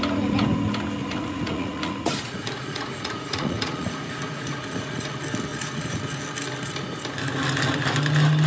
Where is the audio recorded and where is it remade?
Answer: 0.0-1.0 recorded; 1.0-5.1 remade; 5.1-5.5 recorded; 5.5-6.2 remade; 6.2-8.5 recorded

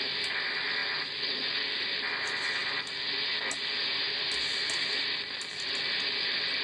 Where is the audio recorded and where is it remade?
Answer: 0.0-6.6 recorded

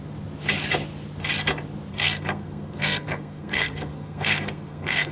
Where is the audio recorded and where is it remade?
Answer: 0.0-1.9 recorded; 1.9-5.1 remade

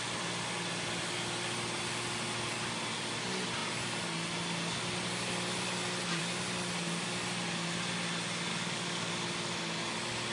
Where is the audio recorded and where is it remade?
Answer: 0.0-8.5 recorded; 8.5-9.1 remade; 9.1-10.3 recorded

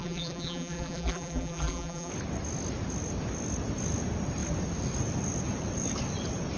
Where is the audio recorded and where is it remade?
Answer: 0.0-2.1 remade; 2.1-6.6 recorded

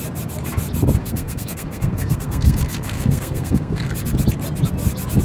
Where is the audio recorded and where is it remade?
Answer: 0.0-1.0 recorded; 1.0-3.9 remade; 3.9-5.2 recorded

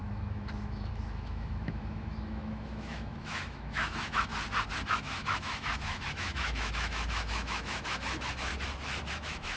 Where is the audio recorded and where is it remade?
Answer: 0.0-4.3 remade; 4.3-4.9 recorded; 4.9-8.5 remade; 8.5-9.1 recorded; 9.1-9.6 remade